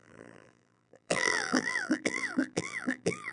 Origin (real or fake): fake